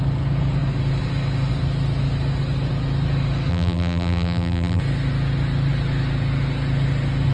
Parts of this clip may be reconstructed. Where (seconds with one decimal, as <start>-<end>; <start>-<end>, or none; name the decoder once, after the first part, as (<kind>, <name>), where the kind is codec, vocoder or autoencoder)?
3.5-4.8 (vocoder, BigVGAN v2)